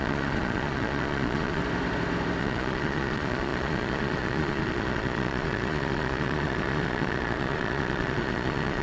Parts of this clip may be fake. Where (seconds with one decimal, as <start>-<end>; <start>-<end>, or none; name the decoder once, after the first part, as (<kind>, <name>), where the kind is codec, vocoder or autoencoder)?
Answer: 0.0-1.6 (vocoder, Vocos); 2.4-8.8